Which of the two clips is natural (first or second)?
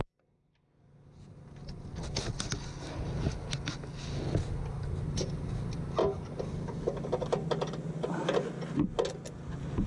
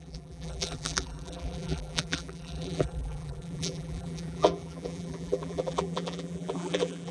first